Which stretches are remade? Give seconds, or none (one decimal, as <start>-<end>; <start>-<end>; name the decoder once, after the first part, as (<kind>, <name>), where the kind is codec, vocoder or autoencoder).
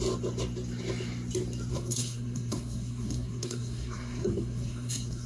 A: 1.7-5.3 (codec, SNAC)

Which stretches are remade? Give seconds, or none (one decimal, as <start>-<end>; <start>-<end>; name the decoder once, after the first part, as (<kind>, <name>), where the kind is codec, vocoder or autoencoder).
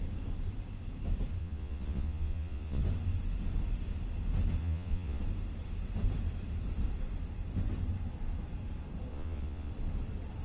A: 1.4-2.8 (vocoder, Vocos); 4.6-5.2; 9.1-9.7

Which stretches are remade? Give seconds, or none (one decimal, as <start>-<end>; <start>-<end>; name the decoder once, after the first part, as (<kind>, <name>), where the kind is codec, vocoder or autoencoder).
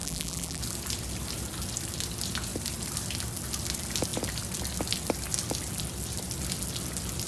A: 0.0-0.6 (vocoder, BigVGAN v2)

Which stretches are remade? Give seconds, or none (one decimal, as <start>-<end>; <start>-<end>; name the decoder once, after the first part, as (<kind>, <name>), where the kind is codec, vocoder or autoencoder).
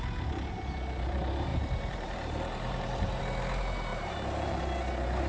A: 1.5-3.2 (vocoder, BigVGAN v2); 3.9-4.6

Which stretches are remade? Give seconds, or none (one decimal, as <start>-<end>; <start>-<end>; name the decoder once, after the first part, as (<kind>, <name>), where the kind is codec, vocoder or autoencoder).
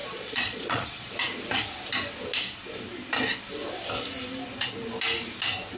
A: 0.0-1.1 (vocoder, Vocos)